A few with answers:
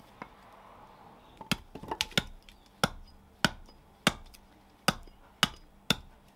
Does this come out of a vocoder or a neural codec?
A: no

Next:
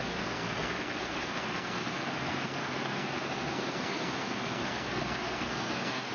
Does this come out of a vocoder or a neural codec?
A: yes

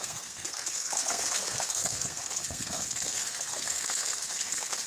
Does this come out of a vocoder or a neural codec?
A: yes